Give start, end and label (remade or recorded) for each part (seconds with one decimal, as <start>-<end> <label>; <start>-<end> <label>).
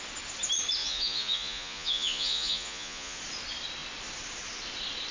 0.0-0.8 recorded; 0.8-3.2 remade; 3.2-5.1 recorded